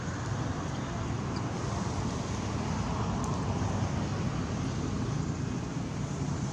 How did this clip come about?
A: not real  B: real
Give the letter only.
B